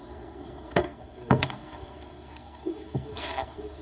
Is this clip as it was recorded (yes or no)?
no